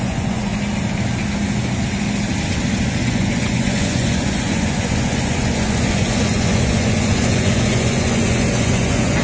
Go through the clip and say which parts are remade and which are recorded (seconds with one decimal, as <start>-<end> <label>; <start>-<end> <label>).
0.0-0.5 remade; 0.5-3.0 recorded; 3.0-9.2 remade